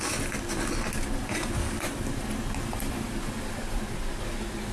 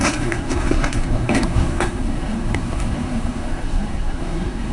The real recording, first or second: first